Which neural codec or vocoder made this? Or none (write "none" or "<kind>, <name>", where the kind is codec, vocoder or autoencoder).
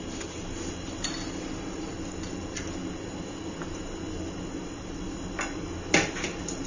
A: none